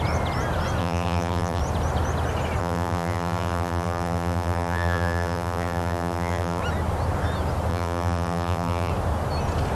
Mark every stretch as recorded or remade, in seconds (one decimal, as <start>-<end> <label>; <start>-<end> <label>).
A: 0.0-0.8 recorded; 0.8-1.6 remade; 1.6-2.6 recorded; 2.6-6.6 remade; 6.6-7.7 recorded; 7.7-8.9 remade; 8.9-9.7 recorded